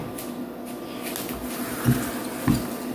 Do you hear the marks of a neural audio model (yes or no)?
no